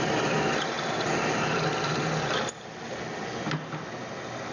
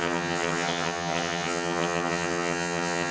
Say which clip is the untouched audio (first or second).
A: first